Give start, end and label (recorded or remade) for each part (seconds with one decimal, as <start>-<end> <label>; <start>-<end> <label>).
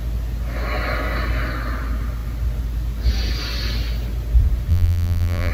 0.0-4.7 recorded; 4.7-5.5 remade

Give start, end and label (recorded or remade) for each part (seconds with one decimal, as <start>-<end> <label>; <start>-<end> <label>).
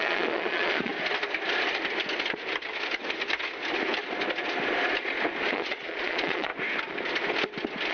0.0-0.9 remade; 0.9-5.5 recorded; 5.5-6.5 remade; 6.5-7.9 recorded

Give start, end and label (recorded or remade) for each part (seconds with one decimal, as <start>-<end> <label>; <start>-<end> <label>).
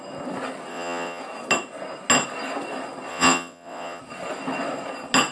0.0-0.7 recorded; 0.7-1.2 remade; 1.2-3.1 recorded; 3.1-4.0 remade; 4.0-5.3 recorded